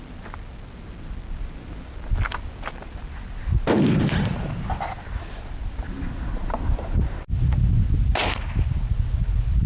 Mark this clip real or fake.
real